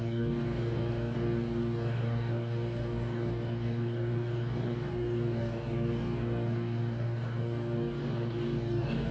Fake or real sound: fake